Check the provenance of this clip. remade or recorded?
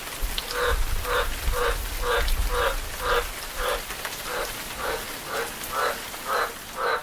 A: recorded